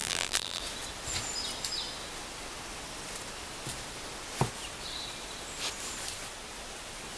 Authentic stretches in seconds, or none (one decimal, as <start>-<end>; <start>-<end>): 0.6-7.2